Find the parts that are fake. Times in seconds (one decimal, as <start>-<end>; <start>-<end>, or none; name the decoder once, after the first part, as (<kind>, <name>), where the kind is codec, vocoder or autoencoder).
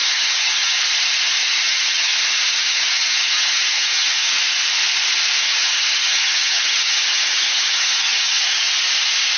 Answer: 0.0-0.8 (vocoder, HiFi-GAN); 1.4-4.4; 5.4-8.7